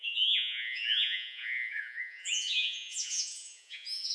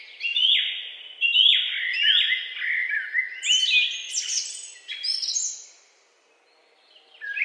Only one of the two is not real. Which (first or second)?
first